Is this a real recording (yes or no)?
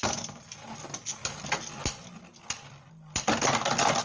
yes